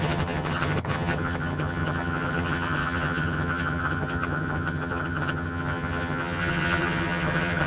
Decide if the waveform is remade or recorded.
remade